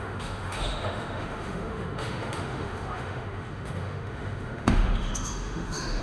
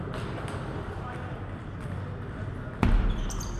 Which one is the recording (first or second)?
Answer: second